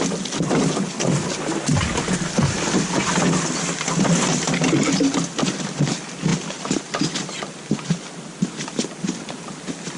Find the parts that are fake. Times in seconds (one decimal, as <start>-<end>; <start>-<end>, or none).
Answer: none